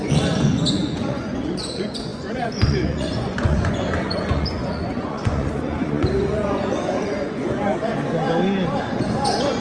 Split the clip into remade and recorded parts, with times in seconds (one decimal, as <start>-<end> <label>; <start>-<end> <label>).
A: 0.0-7.9 remade; 7.9-8.9 recorded; 8.9-9.6 remade